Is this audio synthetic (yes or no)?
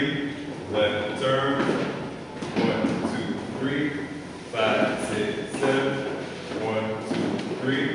no